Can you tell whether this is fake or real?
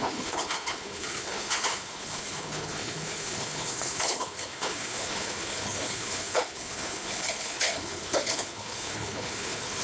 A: fake